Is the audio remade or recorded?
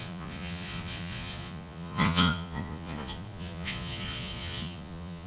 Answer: remade